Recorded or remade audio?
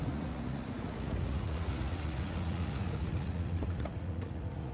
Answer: remade